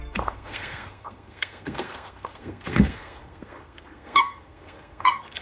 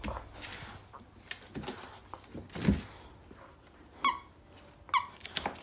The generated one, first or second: first